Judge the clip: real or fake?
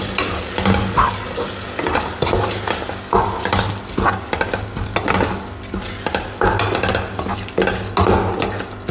real